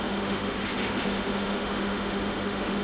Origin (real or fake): fake